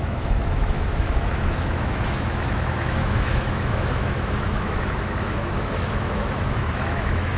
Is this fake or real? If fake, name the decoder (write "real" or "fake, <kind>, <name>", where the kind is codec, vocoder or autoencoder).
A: fake, autoencoder, DAC-VAE